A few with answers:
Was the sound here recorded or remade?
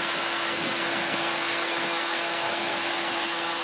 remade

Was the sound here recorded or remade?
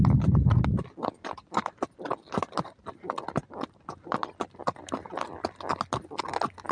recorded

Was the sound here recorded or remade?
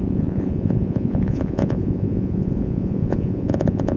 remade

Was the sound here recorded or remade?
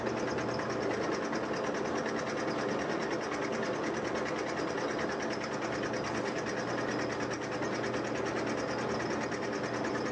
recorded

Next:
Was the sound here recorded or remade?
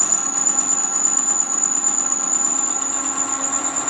recorded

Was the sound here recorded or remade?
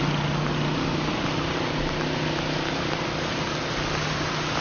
recorded